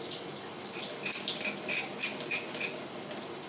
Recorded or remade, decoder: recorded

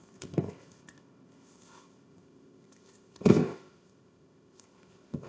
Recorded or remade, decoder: remade, codec, ZipCodec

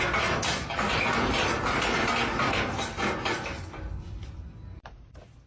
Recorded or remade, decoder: recorded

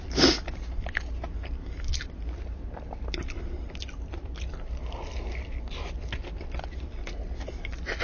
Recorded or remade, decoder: recorded